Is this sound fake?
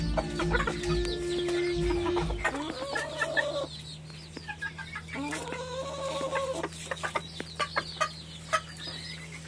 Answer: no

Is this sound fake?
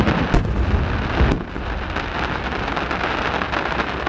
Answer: no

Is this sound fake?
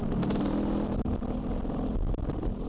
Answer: no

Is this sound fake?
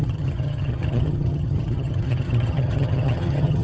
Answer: yes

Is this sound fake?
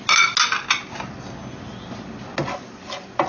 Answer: no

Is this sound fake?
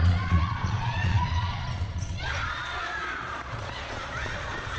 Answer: yes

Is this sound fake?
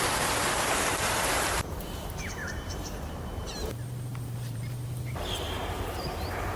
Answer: yes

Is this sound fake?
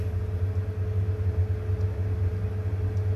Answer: no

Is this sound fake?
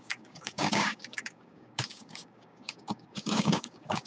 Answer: yes